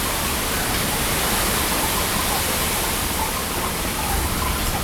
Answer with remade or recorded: recorded